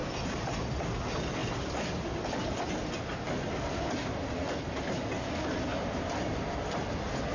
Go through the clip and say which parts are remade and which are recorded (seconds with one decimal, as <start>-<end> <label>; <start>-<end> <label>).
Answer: 0.0-7.3 recorded